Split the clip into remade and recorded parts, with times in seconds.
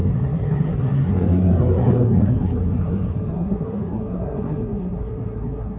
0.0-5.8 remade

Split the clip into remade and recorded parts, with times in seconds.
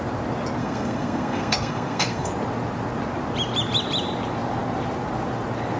0.0-0.6 recorded; 0.6-2.3 remade; 2.3-5.8 recorded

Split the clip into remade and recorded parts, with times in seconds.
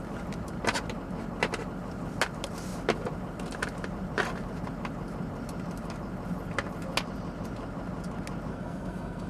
0.0-8.5 recorded; 8.5-9.3 remade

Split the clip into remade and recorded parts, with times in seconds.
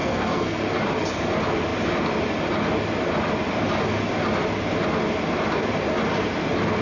0.0-0.6 remade; 0.6-6.8 recorded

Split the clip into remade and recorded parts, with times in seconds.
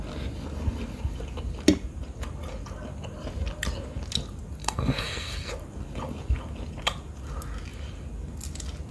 0.0-4.6 recorded; 4.6-5.5 remade; 5.5-8.9 recorded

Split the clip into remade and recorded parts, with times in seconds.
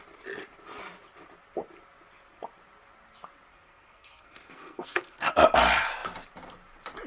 0.0-3.5 recorded; 3.5-5.3 remade; 5.3-7.1 recorded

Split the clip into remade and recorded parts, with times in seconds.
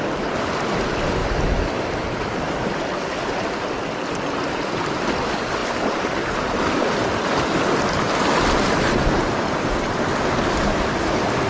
0.0-11.5 recorded